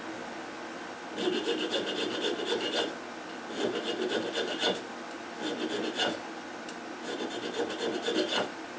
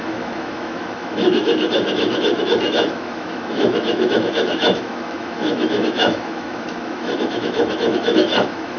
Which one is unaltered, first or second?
first